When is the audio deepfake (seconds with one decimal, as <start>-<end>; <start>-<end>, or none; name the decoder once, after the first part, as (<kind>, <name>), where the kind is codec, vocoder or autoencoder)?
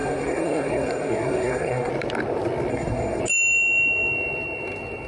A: 0.0-1.9 (codec, SNAC); 2.7-3.2